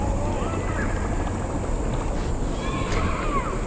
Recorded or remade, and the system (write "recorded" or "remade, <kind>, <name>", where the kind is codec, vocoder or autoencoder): recorded